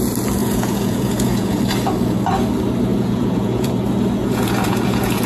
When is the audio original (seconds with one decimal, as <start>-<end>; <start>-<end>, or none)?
0.0-0.4; 1.6-2.9; 3.7-4.2